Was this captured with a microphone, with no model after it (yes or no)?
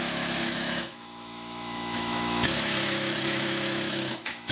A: no